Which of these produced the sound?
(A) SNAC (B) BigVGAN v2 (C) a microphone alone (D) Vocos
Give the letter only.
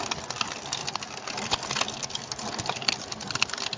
C